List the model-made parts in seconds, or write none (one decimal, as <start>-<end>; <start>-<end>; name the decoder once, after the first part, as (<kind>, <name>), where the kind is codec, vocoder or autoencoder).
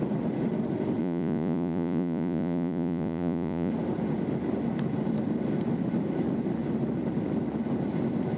1.0-3.7 (vocoder, Vocos)